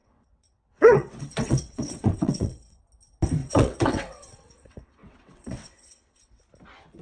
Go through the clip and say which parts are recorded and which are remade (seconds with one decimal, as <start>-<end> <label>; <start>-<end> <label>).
0.0-2.8 remade; 2.8-3.4 recorded; 3.4-6.4 remade; 6.4-7.0 recorded